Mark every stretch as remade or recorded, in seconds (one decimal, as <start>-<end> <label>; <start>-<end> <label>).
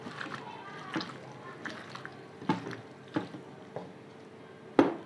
0.0-5.1 recorded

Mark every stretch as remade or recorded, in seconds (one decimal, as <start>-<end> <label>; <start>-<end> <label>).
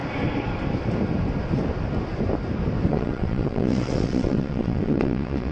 0.0-2.9 recorded; 2.9-5.5 remade